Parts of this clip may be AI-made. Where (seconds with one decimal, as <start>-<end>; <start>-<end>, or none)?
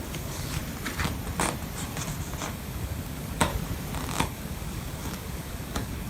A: 0.0-0.6; 2.5-3.5; 4.2-6.1